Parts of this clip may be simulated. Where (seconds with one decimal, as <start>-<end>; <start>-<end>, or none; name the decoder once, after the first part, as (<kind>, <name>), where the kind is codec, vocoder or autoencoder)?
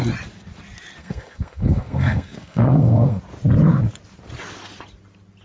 1.0-3.2 (codec, SNAC)